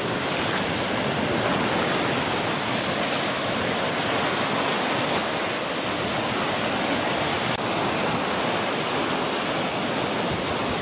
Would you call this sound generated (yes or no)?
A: no